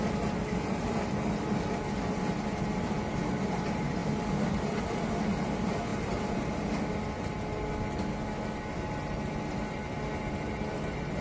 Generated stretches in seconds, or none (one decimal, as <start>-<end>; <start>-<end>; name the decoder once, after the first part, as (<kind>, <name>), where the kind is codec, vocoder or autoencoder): none